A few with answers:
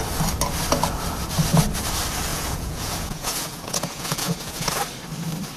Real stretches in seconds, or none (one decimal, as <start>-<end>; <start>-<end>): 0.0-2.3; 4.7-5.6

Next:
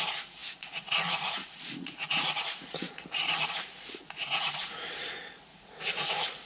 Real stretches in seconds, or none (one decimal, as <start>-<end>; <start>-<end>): none

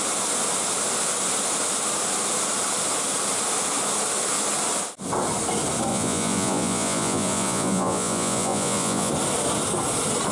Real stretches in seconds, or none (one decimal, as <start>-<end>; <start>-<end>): 0.0-5.9; 9.1-10.3